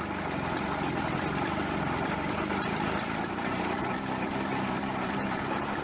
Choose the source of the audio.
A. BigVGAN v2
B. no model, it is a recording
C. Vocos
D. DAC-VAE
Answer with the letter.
B